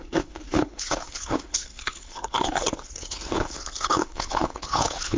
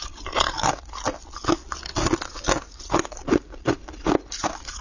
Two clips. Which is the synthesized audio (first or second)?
first